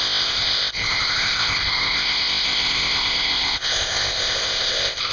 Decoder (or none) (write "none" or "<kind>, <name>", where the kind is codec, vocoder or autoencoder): codec, ZipCodec